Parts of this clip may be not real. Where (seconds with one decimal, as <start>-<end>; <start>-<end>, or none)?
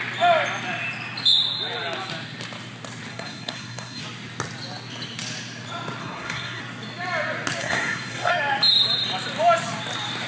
3.1-4.0; 6.0-6.6; 7.6-8.3